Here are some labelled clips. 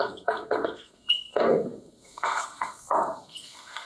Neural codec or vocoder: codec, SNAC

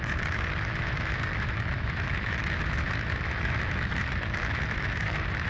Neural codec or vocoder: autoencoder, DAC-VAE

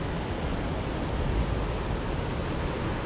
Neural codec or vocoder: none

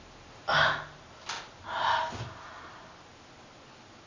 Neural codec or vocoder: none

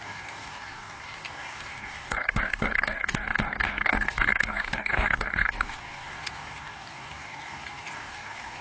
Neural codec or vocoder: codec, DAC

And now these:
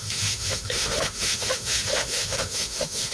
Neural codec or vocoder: autoencoder, DAC-VAE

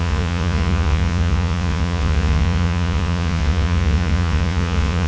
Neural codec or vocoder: vocoder, Vocos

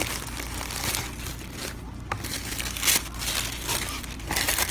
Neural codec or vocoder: none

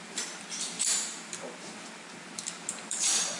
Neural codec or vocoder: none